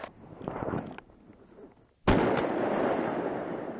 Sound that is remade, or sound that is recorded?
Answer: recorded